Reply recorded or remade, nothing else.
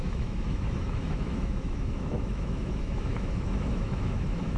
remade